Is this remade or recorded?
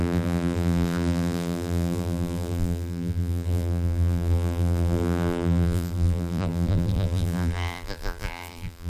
remade